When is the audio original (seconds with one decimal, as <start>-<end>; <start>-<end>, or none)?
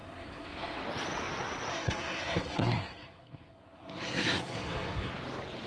0.8-1.7; 5.1-5.7